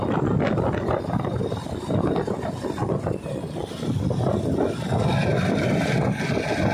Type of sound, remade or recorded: recorded